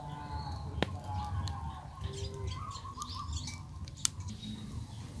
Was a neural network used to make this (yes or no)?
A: no